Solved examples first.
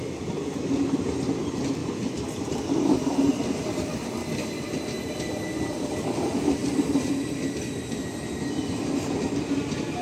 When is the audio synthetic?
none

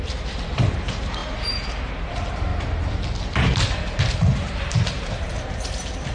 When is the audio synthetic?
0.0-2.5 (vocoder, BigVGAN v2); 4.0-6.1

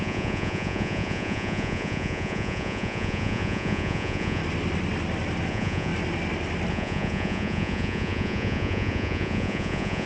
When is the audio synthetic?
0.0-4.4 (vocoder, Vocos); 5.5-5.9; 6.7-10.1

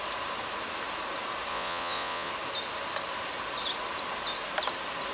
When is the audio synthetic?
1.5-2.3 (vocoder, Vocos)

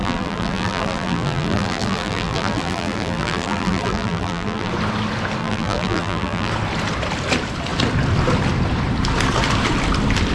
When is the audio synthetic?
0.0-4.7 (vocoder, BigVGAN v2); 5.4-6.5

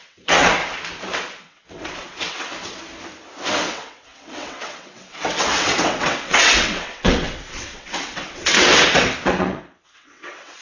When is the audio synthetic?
0.0-0.6 (vocoder, WaveNeXt); 1.4-2.5; 3.5-10.6

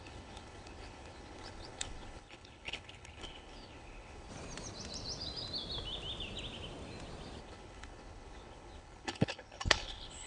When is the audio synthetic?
0.0-4.3 (codec, HILCodec); 7.4-10.3

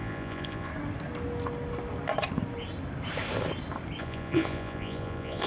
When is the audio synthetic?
0.0-0.7 (vocoder, Vocos); 4.0-5.5